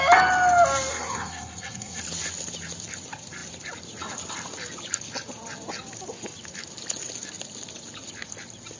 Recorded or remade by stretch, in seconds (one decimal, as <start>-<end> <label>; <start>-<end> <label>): 0.0-0.9 recorded; 0.9-2.0 remade; 2.0-8.8 recorded